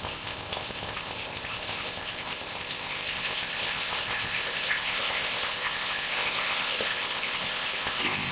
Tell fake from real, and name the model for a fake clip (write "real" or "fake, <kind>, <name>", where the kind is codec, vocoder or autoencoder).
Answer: fake, codec, ZipCodec